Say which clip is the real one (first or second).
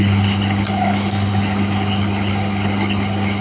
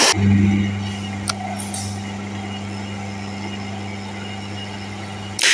second